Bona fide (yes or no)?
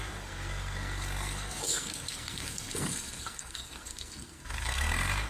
no